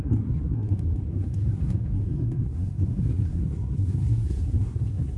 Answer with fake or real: fake